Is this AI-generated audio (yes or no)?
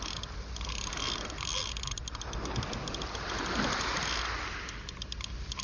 no